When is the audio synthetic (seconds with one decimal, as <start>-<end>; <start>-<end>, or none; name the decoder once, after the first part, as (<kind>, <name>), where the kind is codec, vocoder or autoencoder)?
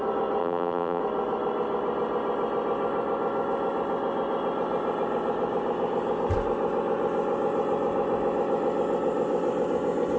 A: 0.4-1.0 (vocoder, BigVGAN v2)